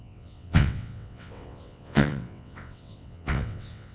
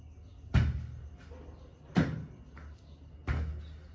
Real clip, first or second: second